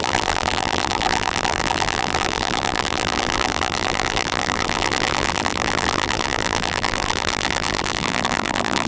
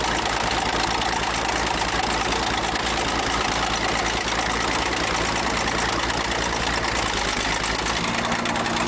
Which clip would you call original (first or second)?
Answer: second